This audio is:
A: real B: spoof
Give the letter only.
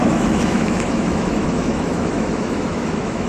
B